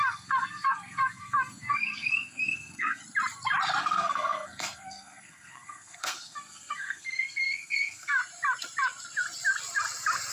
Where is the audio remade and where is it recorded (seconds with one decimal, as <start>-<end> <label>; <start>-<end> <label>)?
0.0-3.0 remade; 3.0-3.8 recorded; 3.8-8.2 remade; 8.2-10.3 recorded